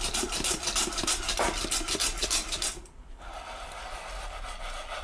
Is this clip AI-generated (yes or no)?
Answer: no